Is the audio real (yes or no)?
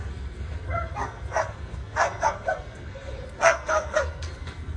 no